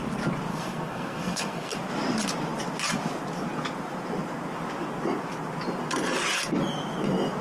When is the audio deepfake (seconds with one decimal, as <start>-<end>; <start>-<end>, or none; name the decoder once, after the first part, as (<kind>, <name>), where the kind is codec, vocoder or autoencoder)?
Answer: 0.5-1.8 (codec, SNAC)